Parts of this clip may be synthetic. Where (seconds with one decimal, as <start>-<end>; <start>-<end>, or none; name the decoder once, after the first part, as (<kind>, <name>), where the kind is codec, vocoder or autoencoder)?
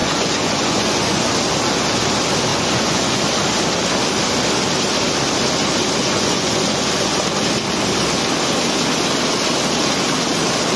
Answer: 0.0-1.2 (vocoder, Vocos); 2.5-3.2; 6.0-7.2